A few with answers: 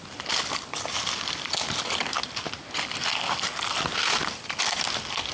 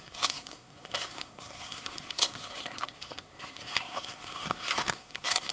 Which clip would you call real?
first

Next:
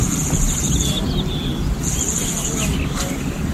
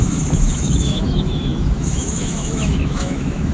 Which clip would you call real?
first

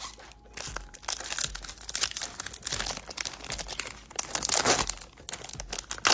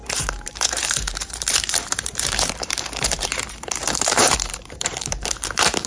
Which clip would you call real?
first